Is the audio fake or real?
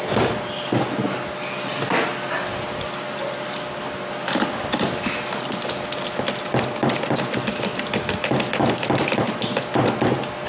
real